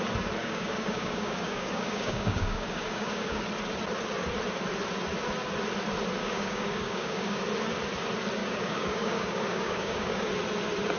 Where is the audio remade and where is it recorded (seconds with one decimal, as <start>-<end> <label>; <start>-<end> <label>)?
0.0-0.4 recorded; 0.4-3.4 remade; 3.4-6.2 recorded; 6.2-7.4 remade; 7.4-8.4 recorded; 8.4-10.3 remade; 10.3-11.0 recorded